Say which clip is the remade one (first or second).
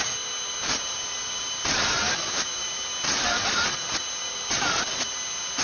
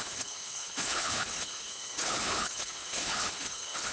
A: second